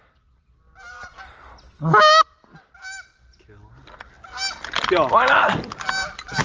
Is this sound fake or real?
real